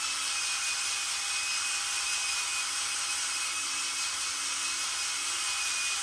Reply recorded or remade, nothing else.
recorded